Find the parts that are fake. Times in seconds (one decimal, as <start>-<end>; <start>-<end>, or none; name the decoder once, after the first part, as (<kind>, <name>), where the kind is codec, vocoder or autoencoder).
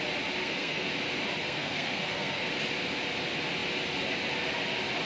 0.4-0.9 (codec, SNAC); 1.4-2.5